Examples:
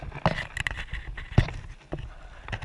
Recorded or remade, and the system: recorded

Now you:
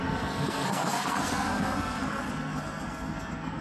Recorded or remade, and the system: remade, codec, SNAC